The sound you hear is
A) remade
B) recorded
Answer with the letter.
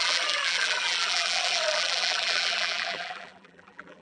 A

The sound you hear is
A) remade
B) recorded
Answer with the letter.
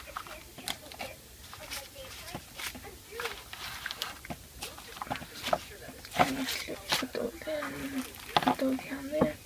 B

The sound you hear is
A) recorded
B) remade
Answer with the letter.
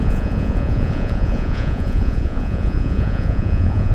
B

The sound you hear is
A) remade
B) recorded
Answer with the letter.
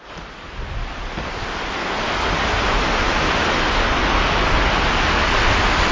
B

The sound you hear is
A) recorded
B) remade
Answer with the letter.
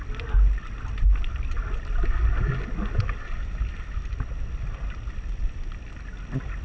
A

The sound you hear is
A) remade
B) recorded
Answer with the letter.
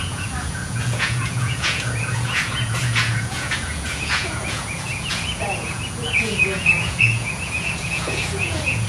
A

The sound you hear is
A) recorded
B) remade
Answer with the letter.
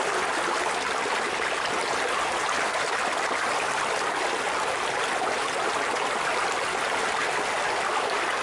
A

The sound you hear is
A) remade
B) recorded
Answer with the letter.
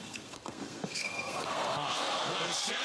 A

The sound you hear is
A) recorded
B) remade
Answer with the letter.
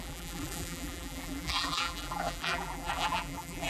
B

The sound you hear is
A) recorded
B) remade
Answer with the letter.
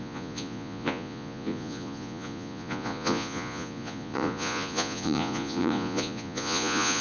B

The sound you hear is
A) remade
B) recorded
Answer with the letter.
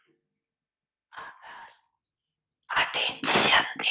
B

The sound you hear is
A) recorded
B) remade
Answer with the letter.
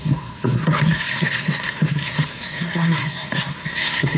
B